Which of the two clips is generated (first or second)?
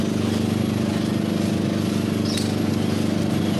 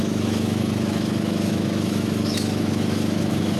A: second